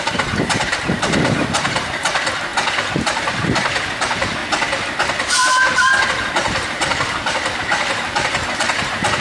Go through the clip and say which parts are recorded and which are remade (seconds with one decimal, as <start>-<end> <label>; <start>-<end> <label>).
0.0-4.4 remade; 4.4-6.1 recorded; 6.1-9.2 remade